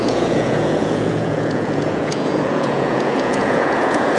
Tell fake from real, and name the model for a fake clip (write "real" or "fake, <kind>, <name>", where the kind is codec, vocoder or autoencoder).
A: fake, vocoder, Vocos